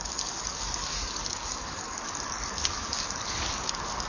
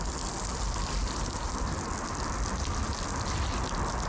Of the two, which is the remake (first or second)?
first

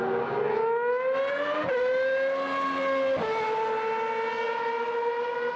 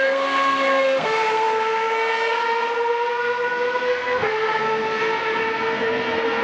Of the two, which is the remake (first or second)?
second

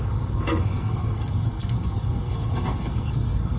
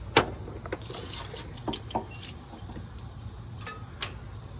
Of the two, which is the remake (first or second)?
first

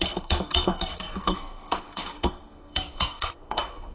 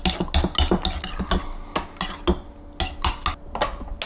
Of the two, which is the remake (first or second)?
first